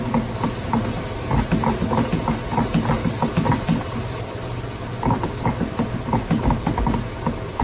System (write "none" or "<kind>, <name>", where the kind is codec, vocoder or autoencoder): none